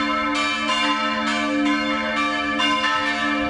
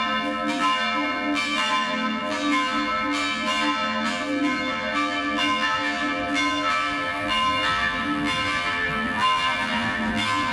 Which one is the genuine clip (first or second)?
first